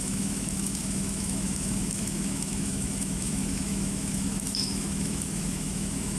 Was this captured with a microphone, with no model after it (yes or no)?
no